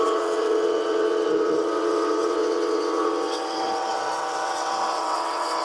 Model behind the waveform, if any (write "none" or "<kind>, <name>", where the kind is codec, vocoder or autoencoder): vocoder, WaveNeXt